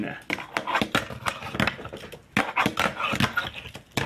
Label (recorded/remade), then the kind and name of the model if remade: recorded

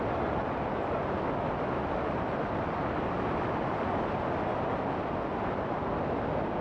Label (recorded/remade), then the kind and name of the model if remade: recorded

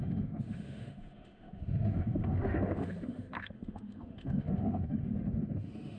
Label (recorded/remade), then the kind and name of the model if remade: remade, autoencoder, DAC-VAE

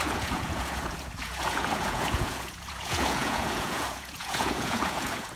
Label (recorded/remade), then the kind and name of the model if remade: remade, vocoder, Vocos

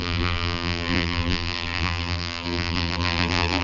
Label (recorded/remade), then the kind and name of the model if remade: remade, vocoder, BigVGAN v2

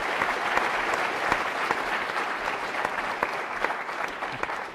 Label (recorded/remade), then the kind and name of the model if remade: recorded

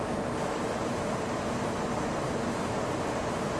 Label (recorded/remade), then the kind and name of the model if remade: recorded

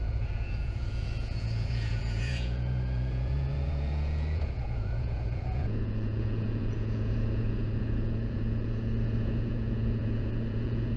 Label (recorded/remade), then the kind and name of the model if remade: remade, vocoder, Vocos